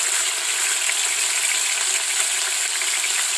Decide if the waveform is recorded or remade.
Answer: recorded